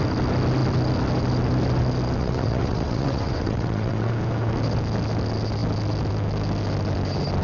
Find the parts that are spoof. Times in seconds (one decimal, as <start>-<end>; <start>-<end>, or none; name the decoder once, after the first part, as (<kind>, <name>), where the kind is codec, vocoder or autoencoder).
2.2-4.1 (vocoder, WaveNeXt)